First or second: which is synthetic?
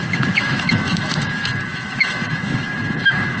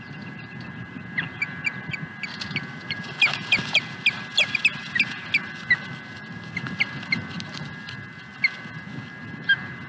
first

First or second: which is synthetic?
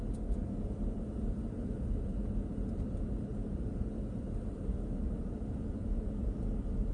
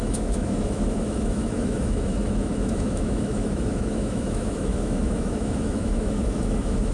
second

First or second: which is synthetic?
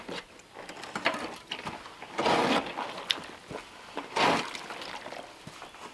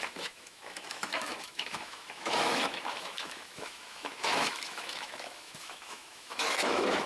second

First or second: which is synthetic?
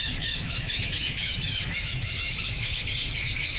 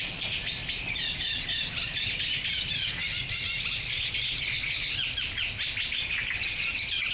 first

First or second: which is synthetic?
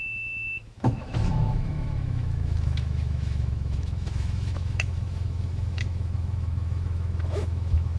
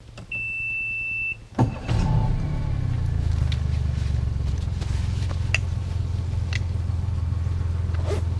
first